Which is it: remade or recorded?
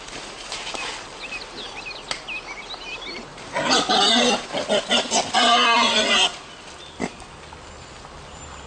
recorded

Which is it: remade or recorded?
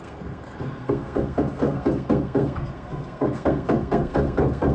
remade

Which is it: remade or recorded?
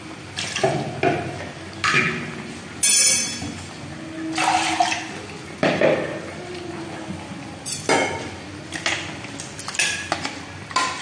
recorded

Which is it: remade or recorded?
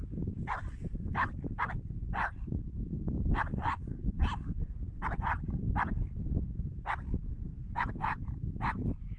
recorded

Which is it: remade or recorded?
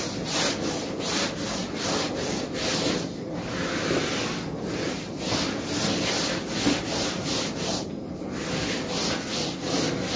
recorded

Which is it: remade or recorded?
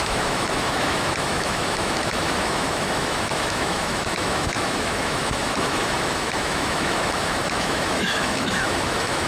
remade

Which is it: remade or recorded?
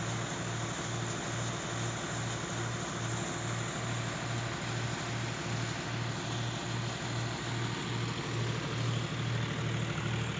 recorded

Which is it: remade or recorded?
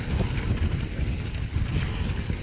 recorded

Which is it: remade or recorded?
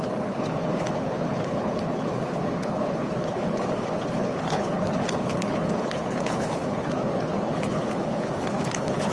remade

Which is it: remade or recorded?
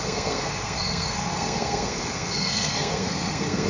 remade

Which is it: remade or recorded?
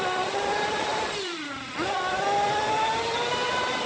remade